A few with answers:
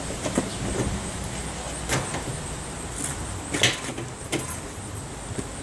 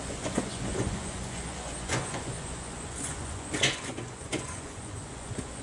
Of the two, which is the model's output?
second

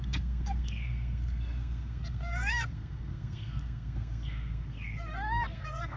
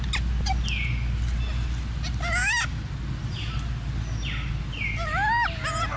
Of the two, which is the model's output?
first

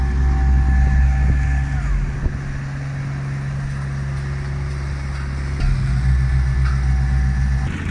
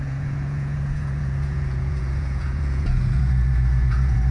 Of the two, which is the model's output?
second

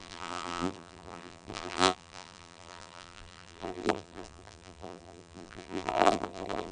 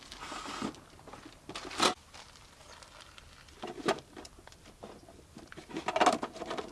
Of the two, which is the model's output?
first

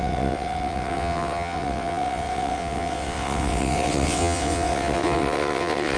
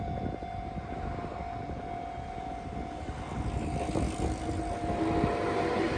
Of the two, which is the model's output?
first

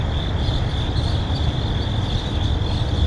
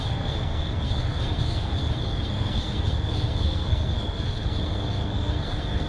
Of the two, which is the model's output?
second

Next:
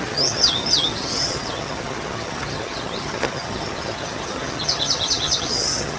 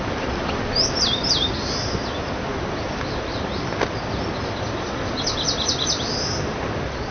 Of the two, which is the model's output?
first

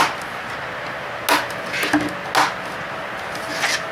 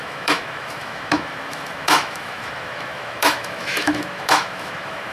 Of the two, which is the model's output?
second